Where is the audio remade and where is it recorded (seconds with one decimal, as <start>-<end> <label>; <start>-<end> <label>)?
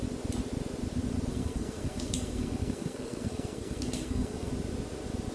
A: 0.0-1.3 recorded; 1.3-4.5 remade; 4.5-5.3 recorded